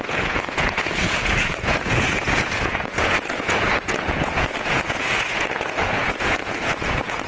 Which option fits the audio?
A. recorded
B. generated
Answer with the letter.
B